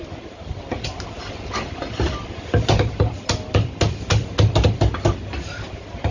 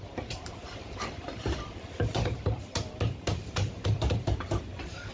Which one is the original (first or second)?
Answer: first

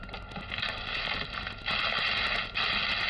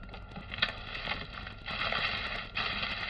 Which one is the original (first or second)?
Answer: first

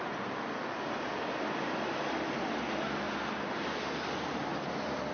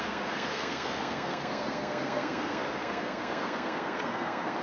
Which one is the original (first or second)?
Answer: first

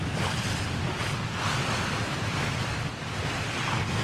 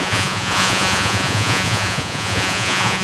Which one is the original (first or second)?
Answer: first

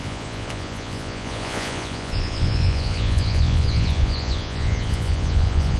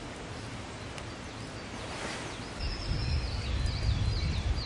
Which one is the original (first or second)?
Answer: second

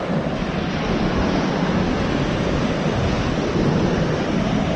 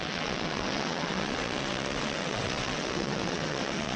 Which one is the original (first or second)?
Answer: first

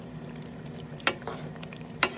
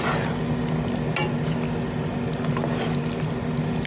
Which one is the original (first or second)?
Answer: second